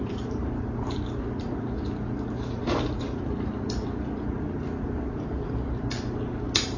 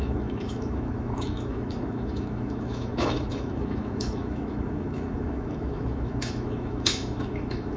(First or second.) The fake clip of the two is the second